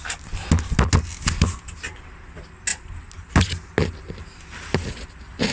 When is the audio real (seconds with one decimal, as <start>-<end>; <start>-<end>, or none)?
0.0-5.5